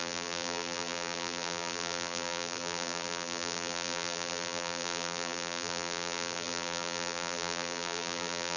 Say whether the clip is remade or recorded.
remade